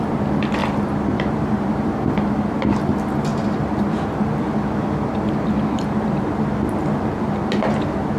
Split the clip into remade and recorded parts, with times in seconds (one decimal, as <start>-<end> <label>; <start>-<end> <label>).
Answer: 0.0-0.6 recorded; 0.6-2.4 remade; 2.4-3.3 recorded; 3.3-6.2 remade; 6.2-8.2 recorded